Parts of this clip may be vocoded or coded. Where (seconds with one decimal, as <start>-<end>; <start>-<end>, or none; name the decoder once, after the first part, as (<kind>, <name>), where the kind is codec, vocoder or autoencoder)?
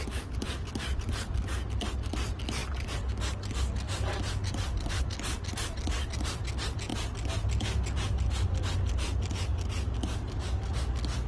none